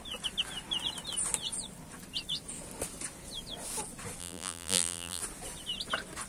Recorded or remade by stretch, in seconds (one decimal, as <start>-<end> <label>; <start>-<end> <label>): 0.0-4.2 recorded; 4.2-5.2 remade; 5.2-6.3 recorded